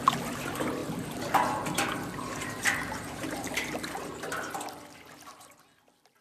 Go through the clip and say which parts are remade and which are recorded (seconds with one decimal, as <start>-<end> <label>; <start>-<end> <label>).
0.0-6.2 recorded